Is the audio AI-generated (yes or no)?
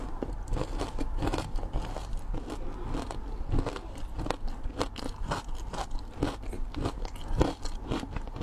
no